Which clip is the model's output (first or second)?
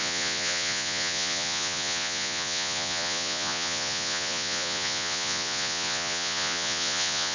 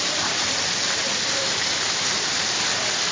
first